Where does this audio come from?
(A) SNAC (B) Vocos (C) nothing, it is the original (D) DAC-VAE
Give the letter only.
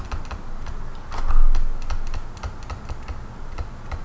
C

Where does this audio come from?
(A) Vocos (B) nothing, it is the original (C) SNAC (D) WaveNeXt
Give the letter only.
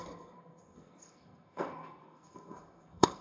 C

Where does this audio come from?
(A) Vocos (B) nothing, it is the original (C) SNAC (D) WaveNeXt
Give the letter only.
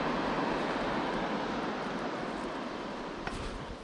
B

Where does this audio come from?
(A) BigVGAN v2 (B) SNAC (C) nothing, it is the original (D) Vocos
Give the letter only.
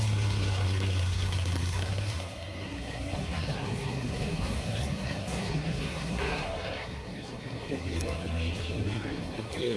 B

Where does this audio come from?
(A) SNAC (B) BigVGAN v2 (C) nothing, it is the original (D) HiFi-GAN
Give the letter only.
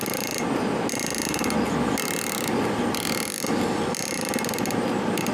C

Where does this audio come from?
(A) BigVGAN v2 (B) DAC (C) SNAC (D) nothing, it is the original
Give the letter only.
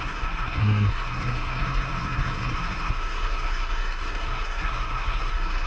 C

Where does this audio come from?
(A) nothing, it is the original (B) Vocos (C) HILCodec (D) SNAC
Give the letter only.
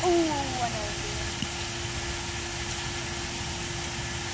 A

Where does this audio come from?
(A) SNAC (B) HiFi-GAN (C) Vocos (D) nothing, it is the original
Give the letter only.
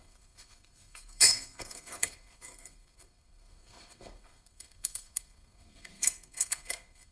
A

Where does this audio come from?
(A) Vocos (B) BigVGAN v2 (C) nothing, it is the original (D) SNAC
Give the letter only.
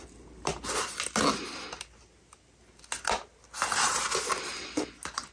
C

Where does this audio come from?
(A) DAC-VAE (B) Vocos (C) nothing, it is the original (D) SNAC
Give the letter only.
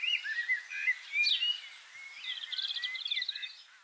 C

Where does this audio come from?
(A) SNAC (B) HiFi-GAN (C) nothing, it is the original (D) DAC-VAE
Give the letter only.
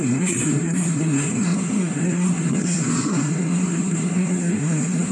A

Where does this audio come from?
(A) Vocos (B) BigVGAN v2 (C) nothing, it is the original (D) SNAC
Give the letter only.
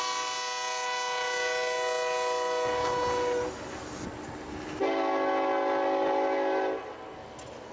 C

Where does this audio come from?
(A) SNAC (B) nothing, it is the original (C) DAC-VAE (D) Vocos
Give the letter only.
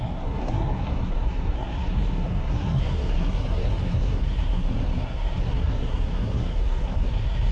A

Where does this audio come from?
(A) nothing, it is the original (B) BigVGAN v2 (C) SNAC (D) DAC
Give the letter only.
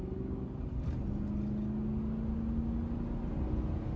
A